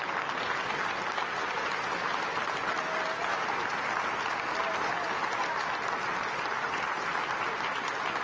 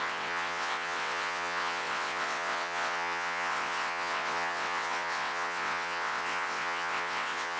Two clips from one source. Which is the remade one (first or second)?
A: second